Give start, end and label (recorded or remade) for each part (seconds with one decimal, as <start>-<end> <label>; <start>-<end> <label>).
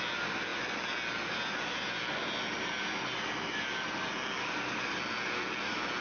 0.0-6.0 recorded